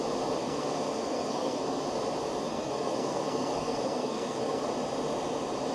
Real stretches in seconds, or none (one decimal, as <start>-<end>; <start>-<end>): 0.0-0.4; 1.8-2.5; 4.7-5.7